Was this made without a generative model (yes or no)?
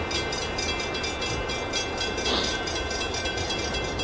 yes